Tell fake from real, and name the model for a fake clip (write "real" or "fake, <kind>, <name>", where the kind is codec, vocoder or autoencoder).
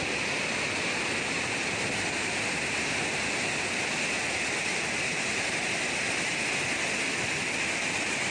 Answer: real